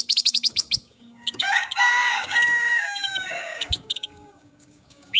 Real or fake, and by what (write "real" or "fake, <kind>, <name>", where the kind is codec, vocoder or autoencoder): fake, codec, DAC